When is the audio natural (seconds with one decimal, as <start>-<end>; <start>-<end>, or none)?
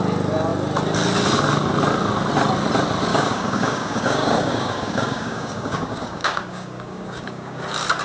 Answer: 0.0-3.1; 7.6-8.0